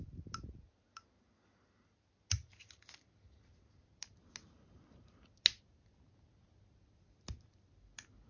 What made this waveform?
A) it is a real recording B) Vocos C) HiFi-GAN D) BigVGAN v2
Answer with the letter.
A